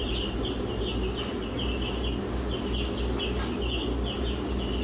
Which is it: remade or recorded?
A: recorded